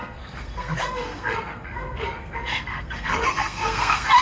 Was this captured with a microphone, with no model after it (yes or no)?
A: no